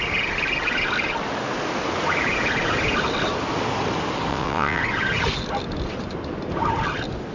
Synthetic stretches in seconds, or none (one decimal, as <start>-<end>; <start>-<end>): 4.3-4.8

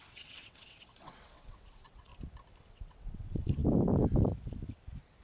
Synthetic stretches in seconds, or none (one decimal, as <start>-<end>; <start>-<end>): 0.0-2.1; 2.7-3.6

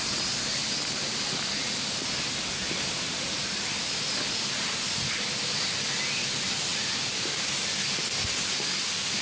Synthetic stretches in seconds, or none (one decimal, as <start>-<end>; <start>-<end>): none

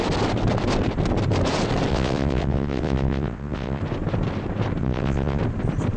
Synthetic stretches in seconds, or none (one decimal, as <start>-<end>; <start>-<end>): 1.9-3.8; 4.8-5.4

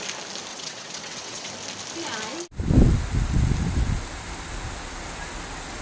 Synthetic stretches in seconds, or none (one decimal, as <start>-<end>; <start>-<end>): 0.5-1.5

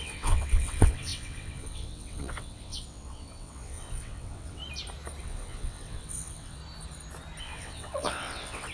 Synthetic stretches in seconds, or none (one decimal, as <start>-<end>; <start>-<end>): 0.0-4.6; 5.2-6.6; 7.4-8.7

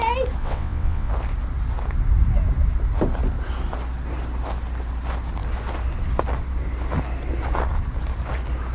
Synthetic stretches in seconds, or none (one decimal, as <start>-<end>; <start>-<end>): 0.4-1.1

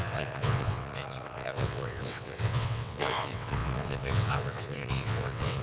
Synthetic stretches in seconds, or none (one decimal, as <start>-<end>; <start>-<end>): 0.0-5.6